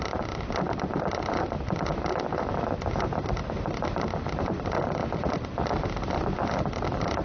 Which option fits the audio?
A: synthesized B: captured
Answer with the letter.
B